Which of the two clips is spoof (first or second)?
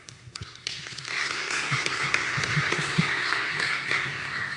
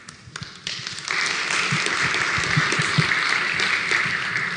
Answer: first